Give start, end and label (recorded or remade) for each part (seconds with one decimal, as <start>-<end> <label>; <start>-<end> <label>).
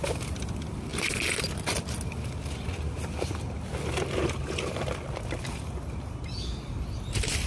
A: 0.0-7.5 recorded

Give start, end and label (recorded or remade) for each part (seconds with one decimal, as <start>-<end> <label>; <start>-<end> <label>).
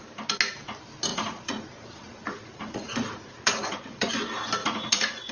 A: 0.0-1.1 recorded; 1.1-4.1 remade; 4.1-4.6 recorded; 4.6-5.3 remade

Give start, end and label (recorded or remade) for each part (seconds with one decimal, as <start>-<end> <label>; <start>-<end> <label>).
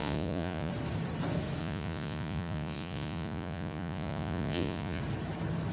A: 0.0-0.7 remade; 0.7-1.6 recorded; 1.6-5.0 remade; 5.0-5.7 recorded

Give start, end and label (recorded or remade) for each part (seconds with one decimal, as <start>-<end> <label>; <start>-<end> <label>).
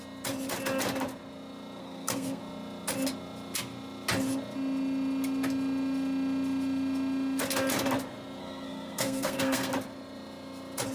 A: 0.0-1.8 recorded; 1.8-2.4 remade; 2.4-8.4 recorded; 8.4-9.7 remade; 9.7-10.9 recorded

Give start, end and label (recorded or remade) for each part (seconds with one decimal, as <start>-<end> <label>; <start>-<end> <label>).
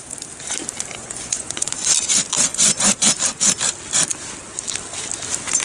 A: 0.0-1.0 recorded; 1.0-1.7 remade; 1.7-2.5 recorded; 2.5-3.1 remade; 3.1-5.6 recorded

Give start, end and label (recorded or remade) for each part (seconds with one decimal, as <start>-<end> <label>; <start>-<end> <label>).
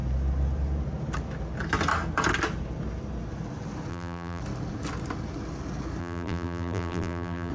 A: 0.0-3.9 recorded; 3.9-4.4 remade; 4.4-6.0 recorded; 6.0-7.5 remade